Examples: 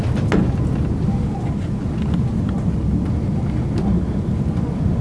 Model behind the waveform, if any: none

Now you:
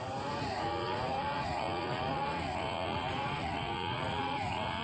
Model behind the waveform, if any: vocoder, Vocos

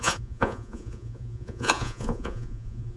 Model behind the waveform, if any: vocoder, Vocos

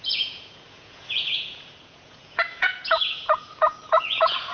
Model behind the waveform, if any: vocoder, Vocos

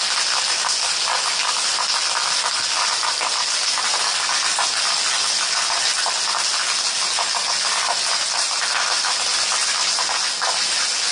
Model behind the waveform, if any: none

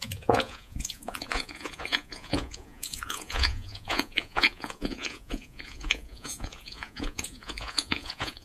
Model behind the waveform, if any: vocoder, Vocos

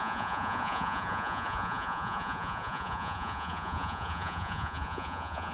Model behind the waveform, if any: vocoder, Vocos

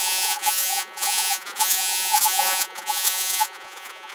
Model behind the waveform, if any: vocoder, Vocos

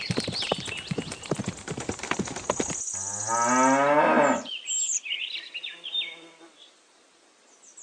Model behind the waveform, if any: none